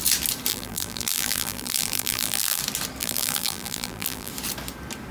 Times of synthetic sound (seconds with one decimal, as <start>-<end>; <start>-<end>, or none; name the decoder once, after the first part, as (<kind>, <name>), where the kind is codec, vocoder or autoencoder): 0.5-2.6 (vocoder, BigVGAN v2); 3.0-4.3